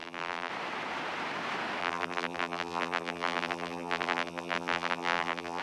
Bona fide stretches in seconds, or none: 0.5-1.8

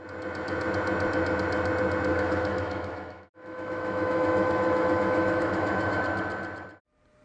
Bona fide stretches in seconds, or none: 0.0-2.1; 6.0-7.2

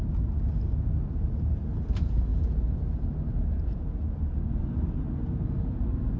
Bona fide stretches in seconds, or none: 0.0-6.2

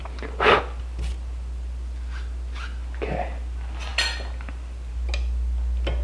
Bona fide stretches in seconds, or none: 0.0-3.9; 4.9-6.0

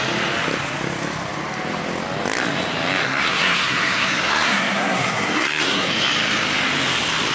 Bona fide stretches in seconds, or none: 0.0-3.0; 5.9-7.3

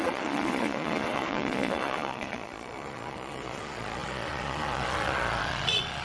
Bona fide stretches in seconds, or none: none